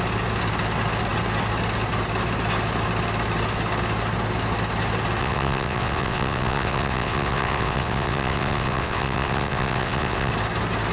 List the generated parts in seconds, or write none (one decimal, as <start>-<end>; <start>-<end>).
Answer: 5.2-10.3